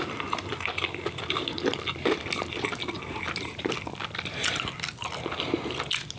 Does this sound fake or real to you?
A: real